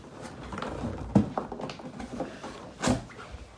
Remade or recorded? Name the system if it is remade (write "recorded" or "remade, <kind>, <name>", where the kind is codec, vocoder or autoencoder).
recorded